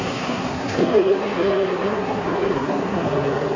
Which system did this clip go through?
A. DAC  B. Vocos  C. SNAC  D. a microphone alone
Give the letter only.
C